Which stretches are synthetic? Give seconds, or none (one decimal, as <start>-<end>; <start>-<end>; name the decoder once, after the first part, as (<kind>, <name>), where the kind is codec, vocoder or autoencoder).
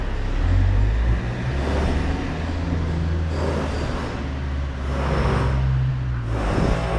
none